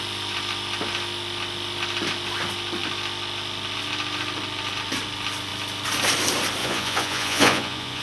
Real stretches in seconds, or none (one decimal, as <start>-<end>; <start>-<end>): 0.0-6.6